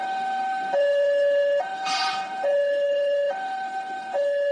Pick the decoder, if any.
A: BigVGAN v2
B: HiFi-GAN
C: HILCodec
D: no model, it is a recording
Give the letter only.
C